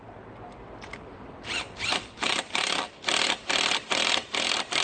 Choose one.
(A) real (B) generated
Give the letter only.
A